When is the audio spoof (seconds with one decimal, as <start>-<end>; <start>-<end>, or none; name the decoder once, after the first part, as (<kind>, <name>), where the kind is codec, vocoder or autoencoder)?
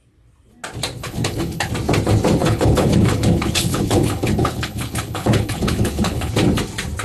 1.0-1.7 (codec, HILCodec); 2.4-6.3